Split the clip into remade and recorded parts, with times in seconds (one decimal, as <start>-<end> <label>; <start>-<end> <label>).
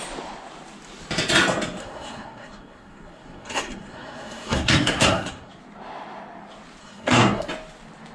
0.0-1.8 recorded; 1.8-5.5 remade; 5.5-6.8 recorded; 6.8-7.5 remade; 7.5-8.1 recorded